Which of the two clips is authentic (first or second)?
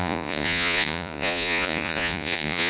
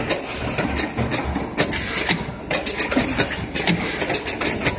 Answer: second